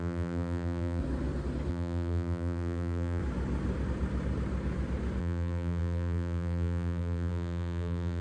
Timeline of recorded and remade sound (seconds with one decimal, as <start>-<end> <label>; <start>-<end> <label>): 0.0-1.0 remade; 1.0-1.7 recorded; 1.7-3.2 remade; 3.2-5.2 recorded; 5.2-8.2 remade